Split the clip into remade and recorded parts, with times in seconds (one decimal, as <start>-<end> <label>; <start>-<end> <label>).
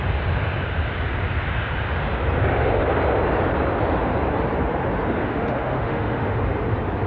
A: 0.0-5.2 recorded; 5.2-6.4 remade; 6.4-7.1 recorded